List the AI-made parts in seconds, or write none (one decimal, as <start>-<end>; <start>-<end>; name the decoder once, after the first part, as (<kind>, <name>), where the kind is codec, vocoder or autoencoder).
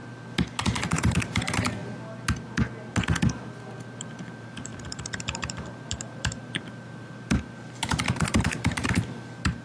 0.9-1.8 (vocoder, BigVGAN v2); 4.0-9.6